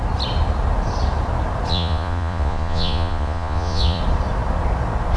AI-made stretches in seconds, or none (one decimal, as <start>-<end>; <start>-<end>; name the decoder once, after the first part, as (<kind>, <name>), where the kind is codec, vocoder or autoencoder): 1.7-4.0 (vocoder, Vocos)